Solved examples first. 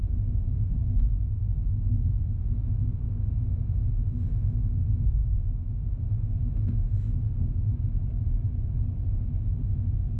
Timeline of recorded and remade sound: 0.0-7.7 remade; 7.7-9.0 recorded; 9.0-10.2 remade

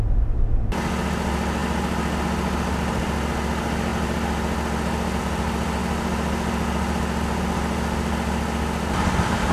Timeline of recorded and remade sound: 0.0-9.5 recorded

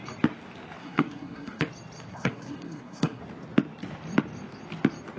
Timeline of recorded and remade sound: 0.0-0.8 recorded; 0.8-1.6 remade; 1.6-2.1 recorded; 2.1-3.2 remade; 3.2-5.2 recorded

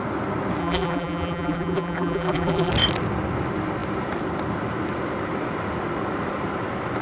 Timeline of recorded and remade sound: 0.0-0.6 recorded; 0.6-2.7 remade; 2.7-7.0 recorded

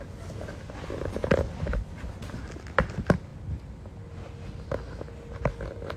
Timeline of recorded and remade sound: 0.0-6.0 recorded

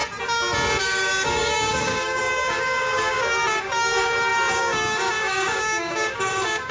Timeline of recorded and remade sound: 0.0-0.8 recorded; 0.8-6.7 remade

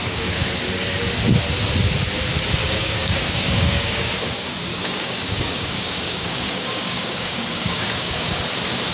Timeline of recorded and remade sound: 0.0-0.6 remade; 0.6-2.6 recorded; 2.6-4.1 remade; 4.1-4.7 recorded; 4.7-8.3 remade; 8.3-8.9 recorded

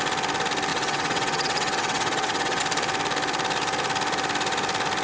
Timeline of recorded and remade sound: 0.0-0.7 recorded; 0.7-2.6 remade; 2.6-5.0 recorded